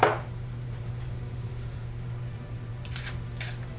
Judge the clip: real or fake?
fake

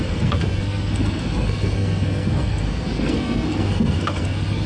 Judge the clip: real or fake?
fake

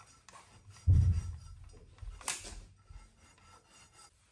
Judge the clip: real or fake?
real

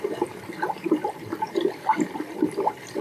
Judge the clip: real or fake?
real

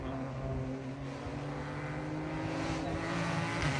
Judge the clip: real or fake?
real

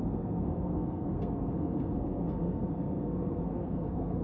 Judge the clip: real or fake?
fake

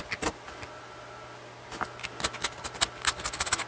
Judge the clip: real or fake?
real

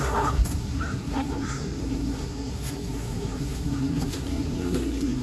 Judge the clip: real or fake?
fake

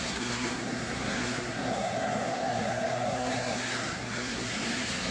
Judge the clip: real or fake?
fake